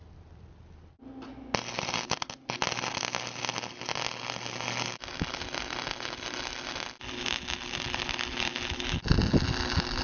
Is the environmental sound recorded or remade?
recorded